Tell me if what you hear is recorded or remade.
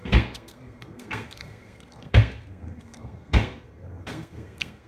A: remade